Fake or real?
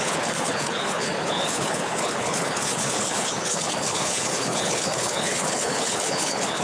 fake